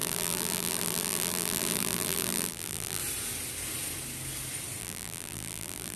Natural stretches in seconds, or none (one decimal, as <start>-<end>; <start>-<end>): 3.0-4.8